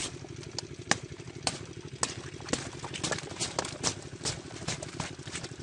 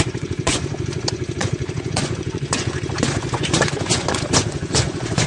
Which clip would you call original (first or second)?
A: first